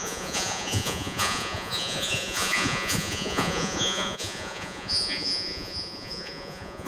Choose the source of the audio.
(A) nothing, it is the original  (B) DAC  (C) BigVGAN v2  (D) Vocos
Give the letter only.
D